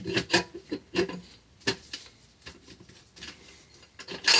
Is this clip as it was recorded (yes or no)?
yes